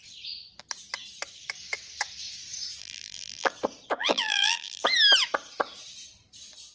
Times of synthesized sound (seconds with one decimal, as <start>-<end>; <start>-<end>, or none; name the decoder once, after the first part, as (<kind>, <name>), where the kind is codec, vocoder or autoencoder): 2.8-3.5 (vocoder, BigVGAN v2); 4.0-4.8